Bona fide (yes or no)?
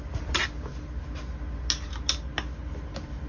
yes